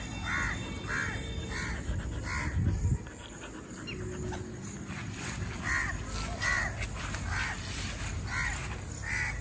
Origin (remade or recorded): recorded